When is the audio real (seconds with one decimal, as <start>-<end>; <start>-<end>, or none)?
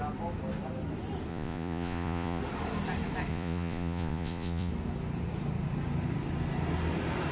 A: 0.0-1.3; 2.4-3.3; 4.7-7.3